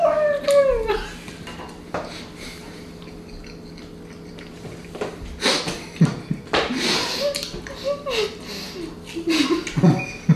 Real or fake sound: real